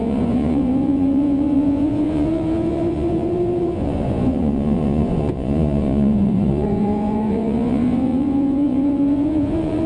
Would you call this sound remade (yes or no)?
yes